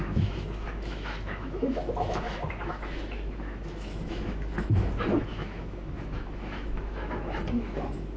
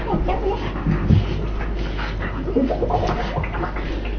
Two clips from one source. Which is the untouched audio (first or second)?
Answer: second